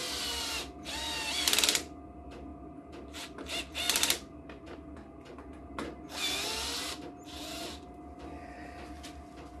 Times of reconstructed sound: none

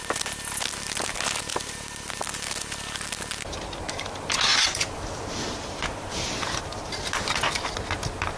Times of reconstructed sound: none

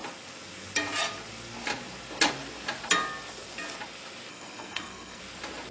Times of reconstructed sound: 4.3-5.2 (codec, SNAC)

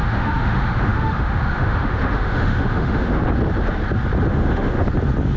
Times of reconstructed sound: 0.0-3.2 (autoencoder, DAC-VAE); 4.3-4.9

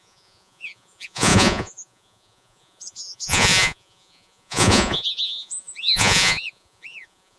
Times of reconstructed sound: 0.0-7.4 (vocoder, Vocos)

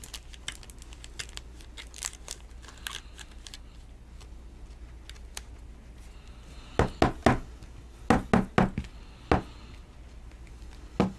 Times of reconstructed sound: none